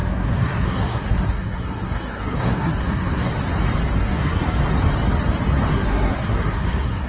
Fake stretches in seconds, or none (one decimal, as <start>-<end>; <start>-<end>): 0.0-3.3; 4.0-4.6; 5.7-7.1